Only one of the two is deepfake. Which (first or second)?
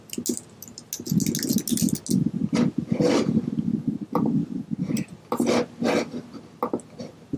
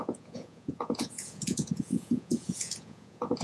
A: second